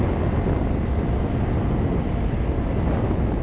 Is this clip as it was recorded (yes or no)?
yes